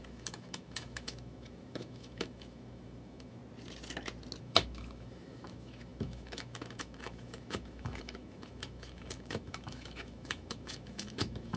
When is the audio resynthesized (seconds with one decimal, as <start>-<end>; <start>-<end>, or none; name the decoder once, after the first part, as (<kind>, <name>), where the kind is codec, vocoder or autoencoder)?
0.0-3.4 (autoencoder, DAC-VAE); 4.4-11.6